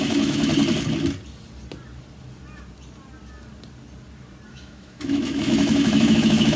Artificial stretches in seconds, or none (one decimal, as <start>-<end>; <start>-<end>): 0.0-0.5; 4.5-6.6